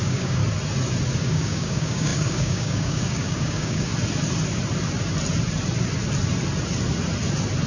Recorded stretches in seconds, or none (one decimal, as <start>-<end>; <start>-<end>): 0.4-1.2; 3.9-7.7